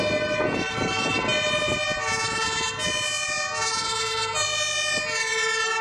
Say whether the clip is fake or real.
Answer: real